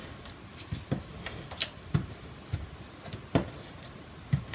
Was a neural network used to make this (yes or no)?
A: no